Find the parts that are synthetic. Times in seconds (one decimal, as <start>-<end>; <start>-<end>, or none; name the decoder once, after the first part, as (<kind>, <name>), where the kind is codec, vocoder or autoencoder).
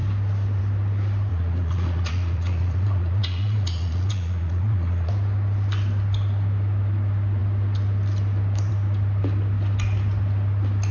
1.3-5.1 (vocoder, Vocos)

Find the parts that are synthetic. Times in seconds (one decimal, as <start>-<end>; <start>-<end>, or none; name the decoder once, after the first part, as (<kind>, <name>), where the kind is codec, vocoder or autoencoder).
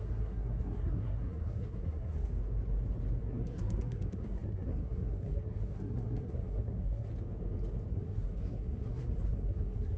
0.0-2.3 (codec, SNAC); 3.2-7.1; 7.9-10.0